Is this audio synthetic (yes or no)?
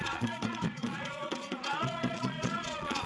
yes